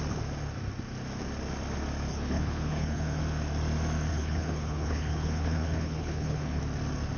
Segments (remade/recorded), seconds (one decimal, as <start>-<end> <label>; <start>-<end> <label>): 0.0-2.1 recorded; 2.1-3.2 remade; 3.2-4.1 recorded; 4.1-6.6 remade; 6.6-7.2 recorded